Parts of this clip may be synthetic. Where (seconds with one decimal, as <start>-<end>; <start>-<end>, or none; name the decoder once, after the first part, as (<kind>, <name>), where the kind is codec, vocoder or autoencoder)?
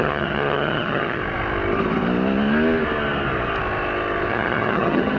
0.0-1.2 (vocoder, HiFi-GAN); 4.3-5.2